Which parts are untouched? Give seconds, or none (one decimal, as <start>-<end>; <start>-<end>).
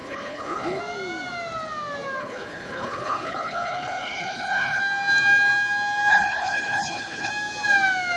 0.8-2.2; 4.8-6.1; 7.3-8.2